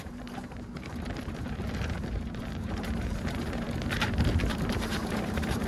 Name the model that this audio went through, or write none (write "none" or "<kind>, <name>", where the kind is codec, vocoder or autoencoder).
vocoder, BigVGAN v2